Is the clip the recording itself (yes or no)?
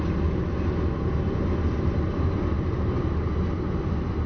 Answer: yes